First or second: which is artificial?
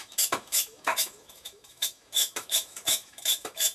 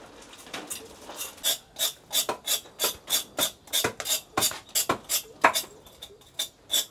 first